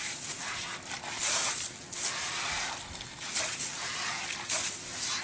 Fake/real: real